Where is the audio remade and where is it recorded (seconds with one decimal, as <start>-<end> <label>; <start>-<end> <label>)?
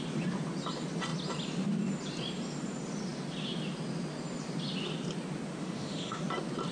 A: 0.0-5.6 recorded; 5.6-6.2 remade; 6.2-6.7 recorded